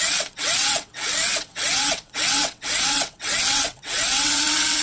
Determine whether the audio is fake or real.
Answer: fake